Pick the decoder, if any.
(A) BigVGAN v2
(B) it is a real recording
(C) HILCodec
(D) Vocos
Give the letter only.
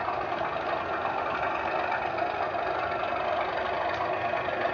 B